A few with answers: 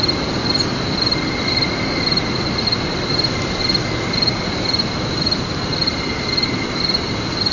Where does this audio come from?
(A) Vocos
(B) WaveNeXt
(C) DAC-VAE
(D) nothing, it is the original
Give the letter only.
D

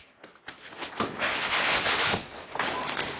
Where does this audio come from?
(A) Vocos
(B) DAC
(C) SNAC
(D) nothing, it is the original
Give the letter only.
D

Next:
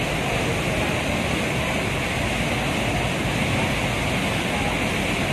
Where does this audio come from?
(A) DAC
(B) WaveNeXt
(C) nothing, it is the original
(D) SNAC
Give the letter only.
C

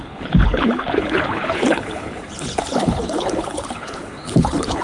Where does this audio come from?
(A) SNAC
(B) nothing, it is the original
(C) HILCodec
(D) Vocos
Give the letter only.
C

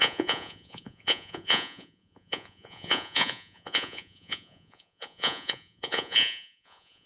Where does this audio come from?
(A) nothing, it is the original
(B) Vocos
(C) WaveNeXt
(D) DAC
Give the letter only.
B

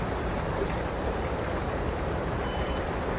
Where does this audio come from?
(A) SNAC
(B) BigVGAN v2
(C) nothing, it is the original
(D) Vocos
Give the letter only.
B